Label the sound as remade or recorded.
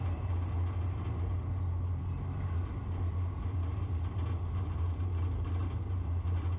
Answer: recorded